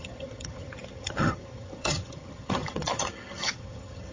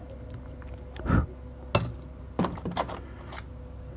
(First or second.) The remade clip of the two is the first